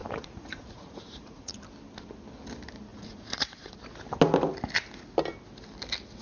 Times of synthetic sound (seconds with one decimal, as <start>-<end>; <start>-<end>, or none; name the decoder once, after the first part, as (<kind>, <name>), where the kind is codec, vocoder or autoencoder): 0.0-1.5 (vocoder, Vocos); 2.9-3.8